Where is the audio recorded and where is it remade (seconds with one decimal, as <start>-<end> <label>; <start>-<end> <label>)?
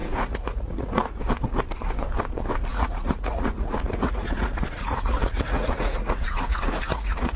0.0-1.2 remade; 1.2-2.7 recorded; 2.7-7.4 remade